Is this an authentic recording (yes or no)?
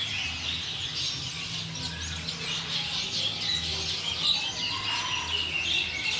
yes